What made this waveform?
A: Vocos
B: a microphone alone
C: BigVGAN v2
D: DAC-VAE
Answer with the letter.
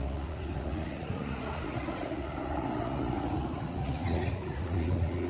A